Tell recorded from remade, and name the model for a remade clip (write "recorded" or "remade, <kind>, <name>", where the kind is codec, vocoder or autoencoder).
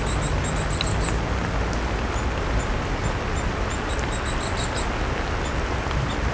recorded